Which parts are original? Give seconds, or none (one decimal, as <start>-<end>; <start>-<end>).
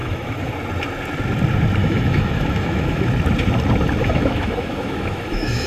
0.5-1.8; 3.1-4.0